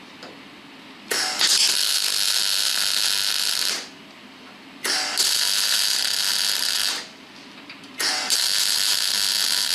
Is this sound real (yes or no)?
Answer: yes